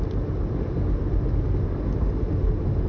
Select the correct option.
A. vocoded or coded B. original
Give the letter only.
B